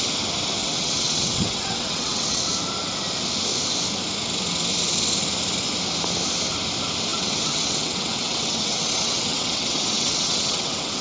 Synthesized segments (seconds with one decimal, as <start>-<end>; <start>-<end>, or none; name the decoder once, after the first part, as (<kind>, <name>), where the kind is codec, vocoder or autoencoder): 0.6-2.4 (vocoder, WaveNeXt); 7.1-11.0